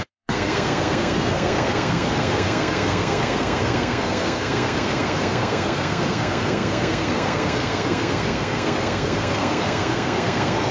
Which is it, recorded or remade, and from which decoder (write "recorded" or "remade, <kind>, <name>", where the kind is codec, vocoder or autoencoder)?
remade, codec, SNAC